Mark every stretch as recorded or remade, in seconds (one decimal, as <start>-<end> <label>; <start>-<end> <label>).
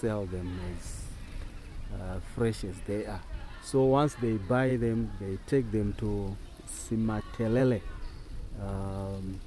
0.0-2.3 recorded; 2.3-2.9 remade; 2.9-9.5 recorded